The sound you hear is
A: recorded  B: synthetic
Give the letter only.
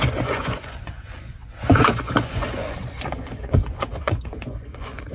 B